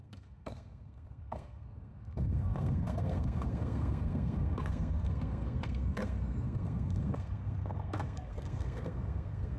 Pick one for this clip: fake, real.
fake